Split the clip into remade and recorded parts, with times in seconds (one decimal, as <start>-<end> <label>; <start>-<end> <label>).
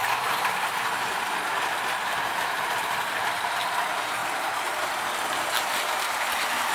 0.0-6.7 remade